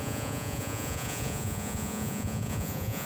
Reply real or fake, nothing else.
fake